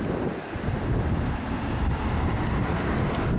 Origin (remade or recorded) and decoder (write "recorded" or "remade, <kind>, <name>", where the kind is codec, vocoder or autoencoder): recorded